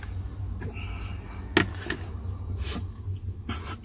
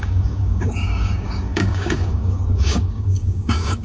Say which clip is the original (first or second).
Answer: first